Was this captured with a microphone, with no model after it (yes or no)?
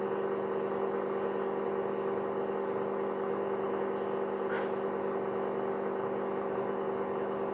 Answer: yes